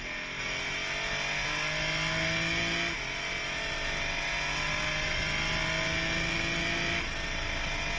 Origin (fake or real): real